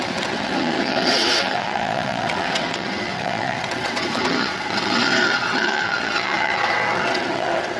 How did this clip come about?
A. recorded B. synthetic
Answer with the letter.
B